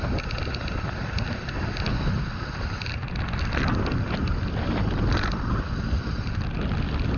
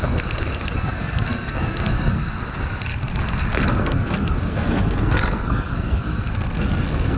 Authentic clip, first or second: first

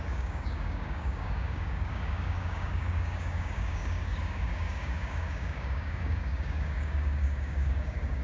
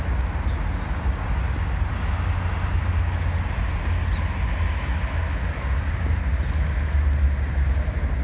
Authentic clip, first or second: second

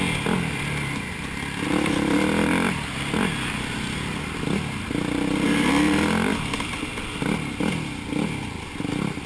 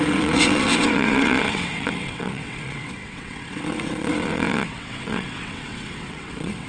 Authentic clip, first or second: first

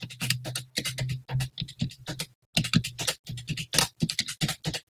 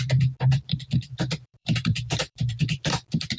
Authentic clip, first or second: first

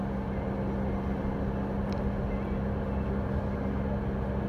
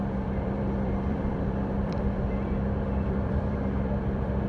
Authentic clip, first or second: first